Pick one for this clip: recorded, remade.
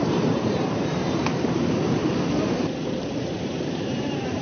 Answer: remade